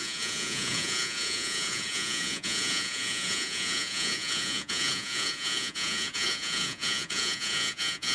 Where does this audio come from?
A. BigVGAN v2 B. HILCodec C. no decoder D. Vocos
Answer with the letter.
D